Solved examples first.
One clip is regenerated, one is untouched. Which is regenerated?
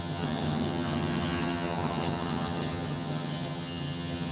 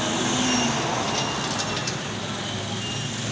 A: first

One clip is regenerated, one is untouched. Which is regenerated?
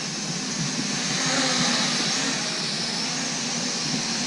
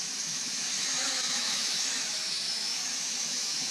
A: second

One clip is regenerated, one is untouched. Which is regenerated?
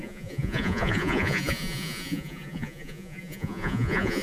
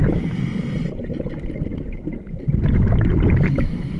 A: first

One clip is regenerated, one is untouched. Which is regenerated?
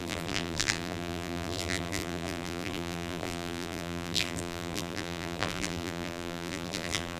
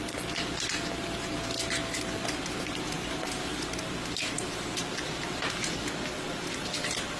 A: first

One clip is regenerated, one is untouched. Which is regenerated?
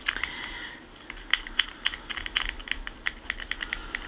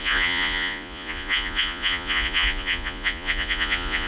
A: second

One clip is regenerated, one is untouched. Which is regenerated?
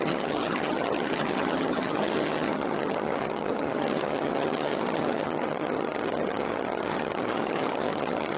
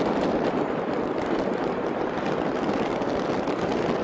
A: first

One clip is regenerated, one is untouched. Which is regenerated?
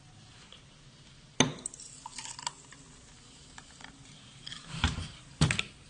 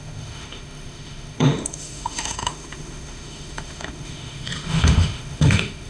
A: second